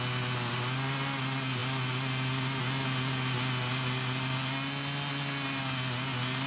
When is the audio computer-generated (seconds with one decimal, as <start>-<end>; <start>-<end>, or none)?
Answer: none